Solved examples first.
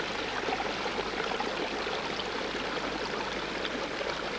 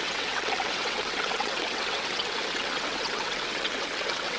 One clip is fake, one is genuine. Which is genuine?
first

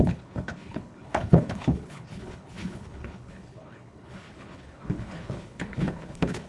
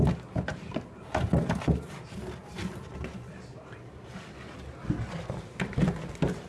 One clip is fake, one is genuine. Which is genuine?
second